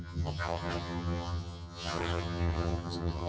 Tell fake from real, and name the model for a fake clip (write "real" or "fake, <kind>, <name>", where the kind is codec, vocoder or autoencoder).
fake, vocoder, HiFi-GAN